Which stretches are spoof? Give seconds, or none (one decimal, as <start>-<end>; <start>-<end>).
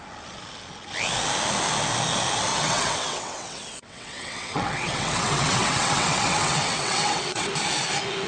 2.5-7.5